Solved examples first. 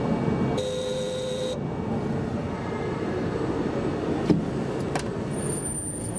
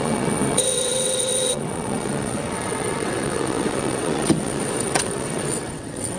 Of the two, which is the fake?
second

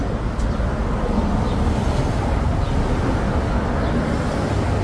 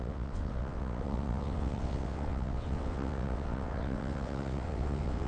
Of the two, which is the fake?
second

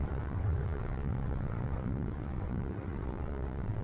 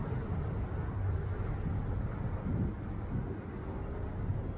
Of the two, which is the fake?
first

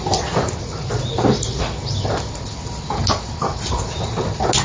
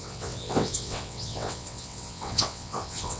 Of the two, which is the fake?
second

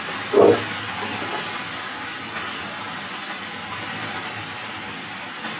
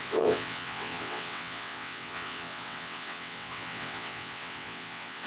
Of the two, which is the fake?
second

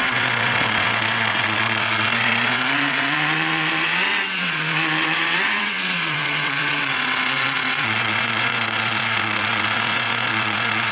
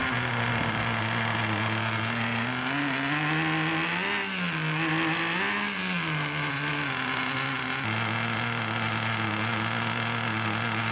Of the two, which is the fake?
first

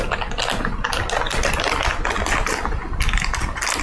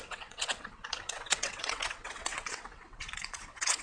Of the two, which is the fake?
second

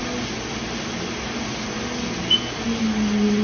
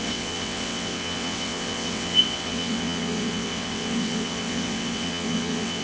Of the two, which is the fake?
second